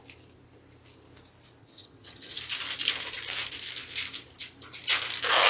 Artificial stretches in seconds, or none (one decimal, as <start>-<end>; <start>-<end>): 1.6-2.4